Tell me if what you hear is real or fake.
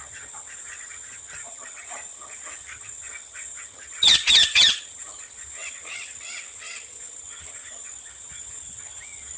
fake